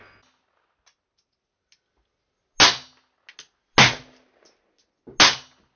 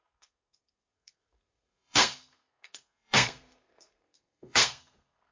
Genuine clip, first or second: first